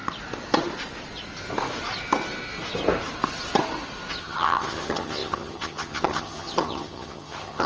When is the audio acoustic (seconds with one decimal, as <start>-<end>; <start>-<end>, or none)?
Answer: 0.0-4.2